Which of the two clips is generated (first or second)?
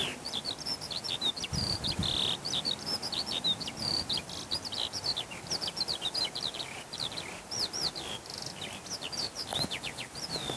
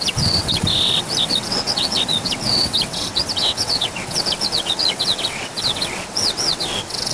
second